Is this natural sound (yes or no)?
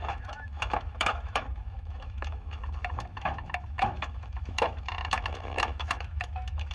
no